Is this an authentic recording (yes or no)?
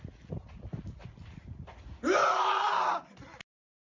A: yes